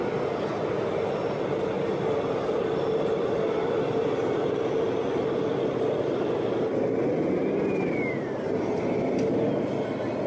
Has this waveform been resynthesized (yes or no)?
no